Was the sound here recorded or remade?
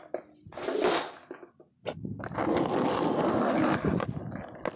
recorded